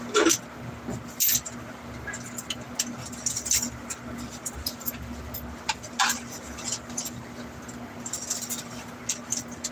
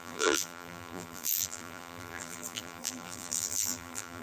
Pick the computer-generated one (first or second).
second